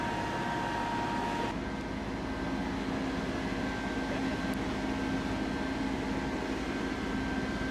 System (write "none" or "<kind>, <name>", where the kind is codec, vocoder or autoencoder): none